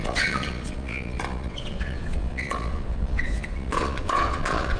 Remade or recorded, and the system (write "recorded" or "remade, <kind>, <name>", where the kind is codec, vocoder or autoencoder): remade, vocoder, Vocos